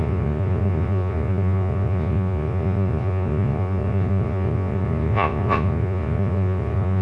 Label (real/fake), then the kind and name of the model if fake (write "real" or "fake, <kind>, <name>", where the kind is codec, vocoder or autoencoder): fake, vocoder, Vocos